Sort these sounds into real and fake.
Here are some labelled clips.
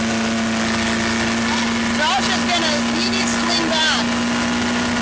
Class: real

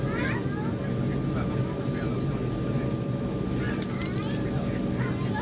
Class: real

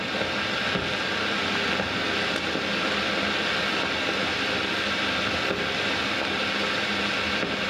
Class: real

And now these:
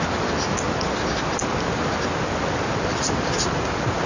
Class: real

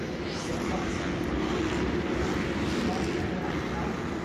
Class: fake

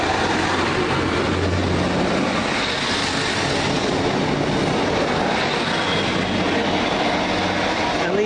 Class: real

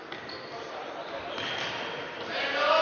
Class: real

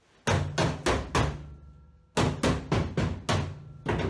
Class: real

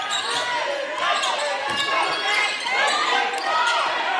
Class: real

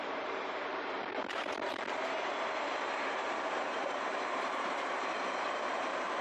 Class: fake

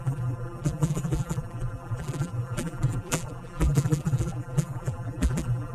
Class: fake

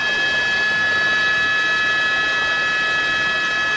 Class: real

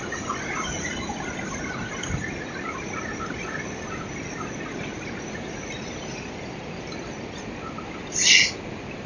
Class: real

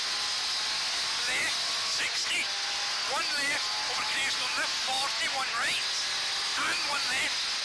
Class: real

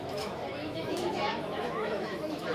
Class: fake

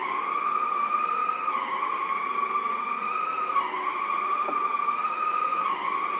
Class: real